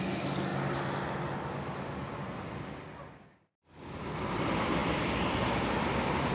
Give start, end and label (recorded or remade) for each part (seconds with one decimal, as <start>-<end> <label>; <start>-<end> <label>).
0.0-6.3 recorded